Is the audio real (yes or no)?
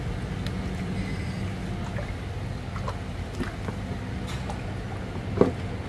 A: yes